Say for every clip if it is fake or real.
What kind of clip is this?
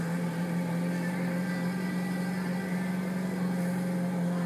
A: real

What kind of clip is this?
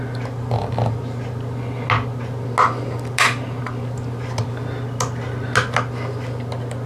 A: real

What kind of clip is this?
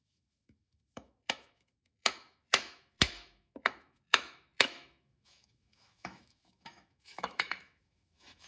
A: fake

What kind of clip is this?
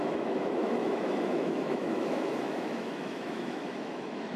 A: fake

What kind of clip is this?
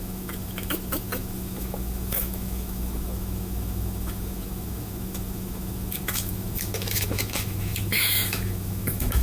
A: fake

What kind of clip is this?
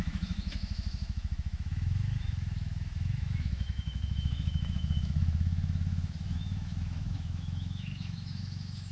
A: fake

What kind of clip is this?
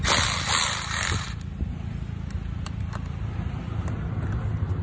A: real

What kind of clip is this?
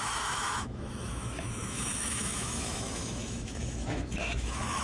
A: fake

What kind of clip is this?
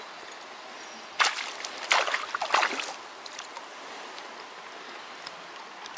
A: real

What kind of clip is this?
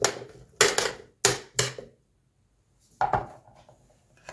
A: real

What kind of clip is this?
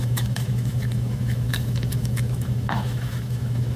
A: fake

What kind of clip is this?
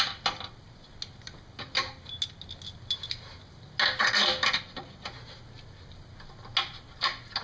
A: real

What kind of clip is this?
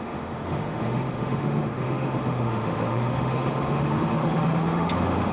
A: fake